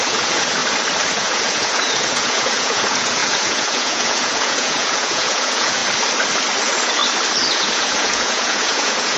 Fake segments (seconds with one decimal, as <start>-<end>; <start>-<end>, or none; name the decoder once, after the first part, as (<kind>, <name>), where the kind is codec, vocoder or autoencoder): 0.0-0.6 (vocoder, Vocos); 1.1-5.8; 6.6-7.0; 7.5-9.2